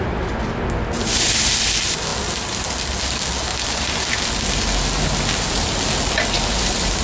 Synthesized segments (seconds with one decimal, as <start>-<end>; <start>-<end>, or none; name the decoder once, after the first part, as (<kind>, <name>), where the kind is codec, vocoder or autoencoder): none